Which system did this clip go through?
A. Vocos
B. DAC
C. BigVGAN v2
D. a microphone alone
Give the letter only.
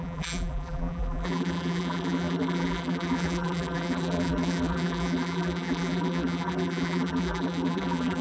C